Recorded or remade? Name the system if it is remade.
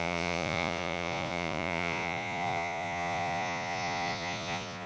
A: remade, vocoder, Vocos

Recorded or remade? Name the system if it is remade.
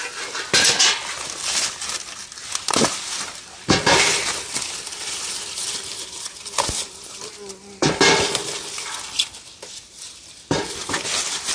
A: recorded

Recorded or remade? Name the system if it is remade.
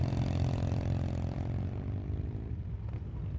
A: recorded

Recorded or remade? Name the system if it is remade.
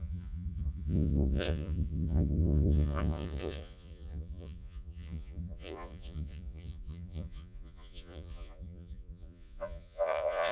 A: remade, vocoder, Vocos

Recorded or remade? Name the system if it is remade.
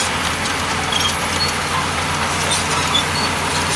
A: recorded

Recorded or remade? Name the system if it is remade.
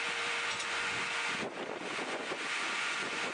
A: remade, vocoder, Vocos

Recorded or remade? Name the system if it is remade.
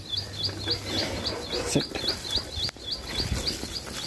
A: recorded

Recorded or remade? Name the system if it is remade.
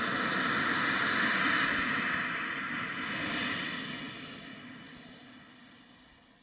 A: recorded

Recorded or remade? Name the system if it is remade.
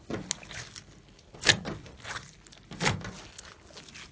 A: recorded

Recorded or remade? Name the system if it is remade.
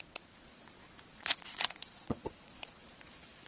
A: remade, vocoder, Vocos